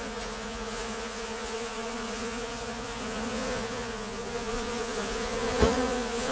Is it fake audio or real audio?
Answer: fake